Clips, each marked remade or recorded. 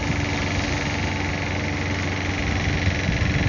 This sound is recorded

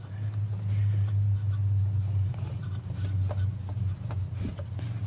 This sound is recorded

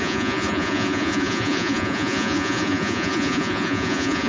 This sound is remade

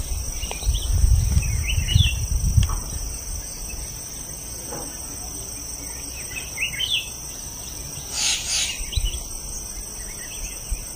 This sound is recorded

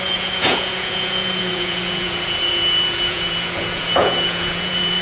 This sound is remade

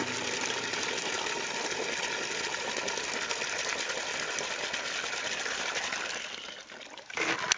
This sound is recorded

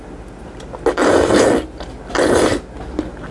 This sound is recorded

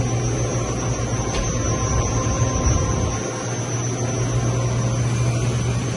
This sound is recorded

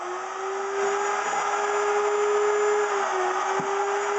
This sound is recorded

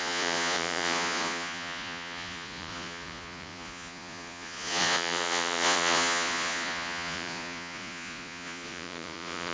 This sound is remade